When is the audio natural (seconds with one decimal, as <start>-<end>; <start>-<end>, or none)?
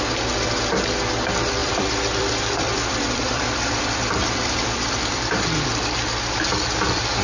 0.0-1.6; 5.3-7.2